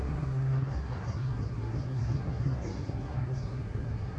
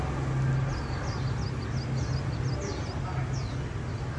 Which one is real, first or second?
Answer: second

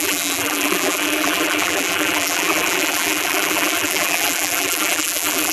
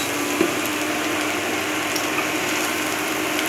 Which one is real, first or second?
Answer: second